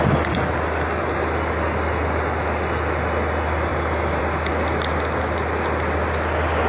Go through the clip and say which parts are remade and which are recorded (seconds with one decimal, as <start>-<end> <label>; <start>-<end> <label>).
0.0-6.7 recorded